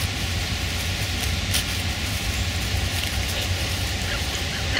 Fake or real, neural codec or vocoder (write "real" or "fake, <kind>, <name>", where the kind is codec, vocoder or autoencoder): real